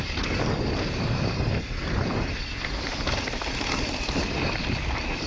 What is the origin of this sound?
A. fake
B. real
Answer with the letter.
B